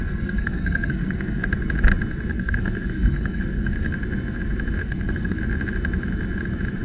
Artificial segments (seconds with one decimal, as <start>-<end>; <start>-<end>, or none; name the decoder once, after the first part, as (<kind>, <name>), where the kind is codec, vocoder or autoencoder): 0.0-1.5 (codec, SNAC); 2.3-3.9; 4.8-5.4